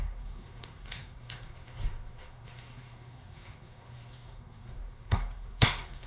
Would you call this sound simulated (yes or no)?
yes